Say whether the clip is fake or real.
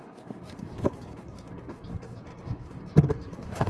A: fake